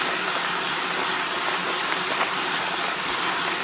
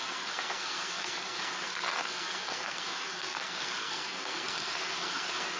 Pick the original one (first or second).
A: first